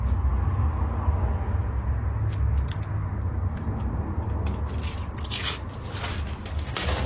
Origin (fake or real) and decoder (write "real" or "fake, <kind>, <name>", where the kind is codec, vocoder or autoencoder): real